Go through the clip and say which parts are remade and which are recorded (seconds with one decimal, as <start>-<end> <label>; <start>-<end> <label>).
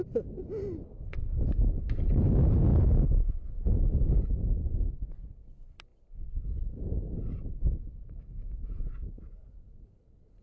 0.0-2.7 recorded; 2.7-3.5 remade; 3.5-10.4 recorded